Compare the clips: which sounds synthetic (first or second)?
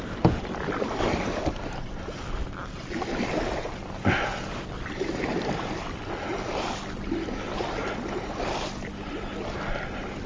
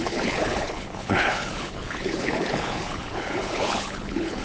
second